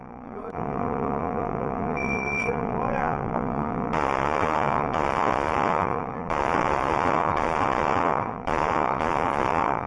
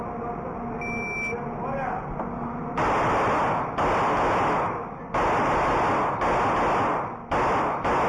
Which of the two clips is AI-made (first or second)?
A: first